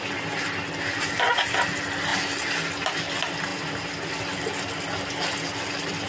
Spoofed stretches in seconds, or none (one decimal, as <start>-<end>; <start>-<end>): none